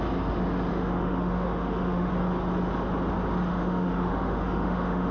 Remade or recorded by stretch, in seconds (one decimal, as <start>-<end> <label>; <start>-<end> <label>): 0.0-0.7 recorded; 0.7-2.1 remade; 2.1-3.5 recorded; 3.5-5.1 remade